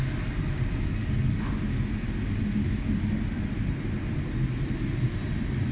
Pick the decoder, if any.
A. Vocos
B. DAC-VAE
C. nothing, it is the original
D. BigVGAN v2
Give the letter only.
C